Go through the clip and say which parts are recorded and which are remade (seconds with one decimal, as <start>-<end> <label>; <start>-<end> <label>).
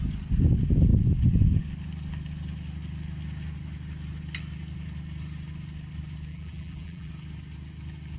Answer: 0.0-6.3 recorded; 6.3-7.1 remade; 7.1-8.2 recorded